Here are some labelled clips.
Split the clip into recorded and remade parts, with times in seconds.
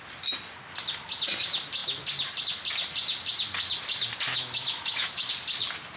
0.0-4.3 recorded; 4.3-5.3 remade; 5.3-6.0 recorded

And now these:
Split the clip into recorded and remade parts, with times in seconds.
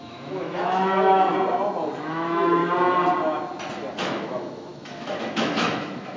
0.0-1.3 remade; 1.3-2.1 recorded; 2.1-2.6 remade; 2.6-3.9 recorded; 3.9-6.2 remade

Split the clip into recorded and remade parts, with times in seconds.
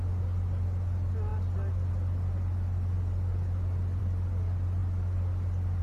0.0-5.8 recorded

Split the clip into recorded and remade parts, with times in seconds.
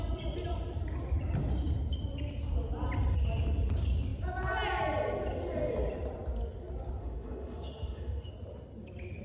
0.0-7.0 recorded; 7.0-8.3 remade; 8.3-9.2 recorded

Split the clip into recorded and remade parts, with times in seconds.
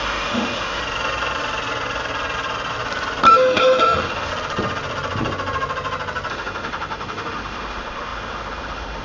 0.0-0.8 remade; 0.8-3.3 recorded; 3.3-4.3 remade; 4.3-6.3 recorded; 6.3-9.0 remade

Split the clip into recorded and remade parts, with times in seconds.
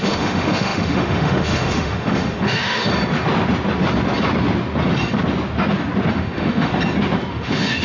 0.0-2.9 remade; 2.9-6.1 recorded; 6.1-6.7 remade; 6.7-7.3 recorded; 7.3-7.8 remade